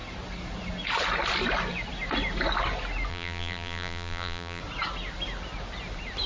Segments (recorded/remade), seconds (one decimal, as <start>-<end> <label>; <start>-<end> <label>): 0.0-3.1 recorded; 3.1-4.6 remade; 4.6-6.3 recorded